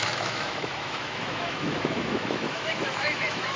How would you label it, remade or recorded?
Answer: remade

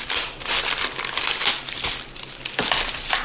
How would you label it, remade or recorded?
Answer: recorded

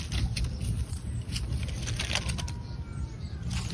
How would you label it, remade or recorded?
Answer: recorded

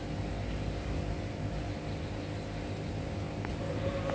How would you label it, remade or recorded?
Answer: recorded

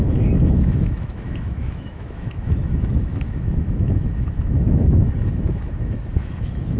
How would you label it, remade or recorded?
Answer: remade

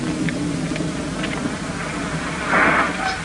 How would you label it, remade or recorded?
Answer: recorded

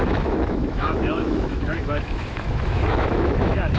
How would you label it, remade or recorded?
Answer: remade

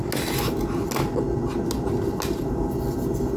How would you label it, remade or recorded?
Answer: recorded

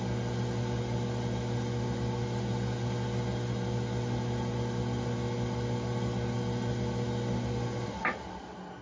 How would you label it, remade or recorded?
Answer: recorded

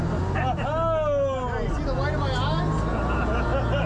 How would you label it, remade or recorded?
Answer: recorded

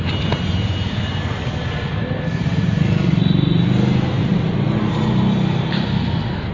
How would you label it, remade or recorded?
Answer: recorded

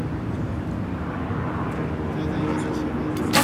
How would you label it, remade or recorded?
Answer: recorded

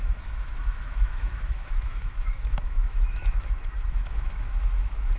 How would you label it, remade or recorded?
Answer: remade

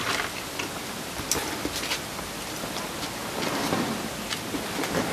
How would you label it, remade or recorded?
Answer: recorded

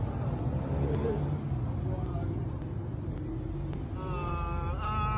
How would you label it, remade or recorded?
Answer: recorded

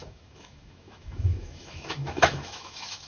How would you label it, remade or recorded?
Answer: remade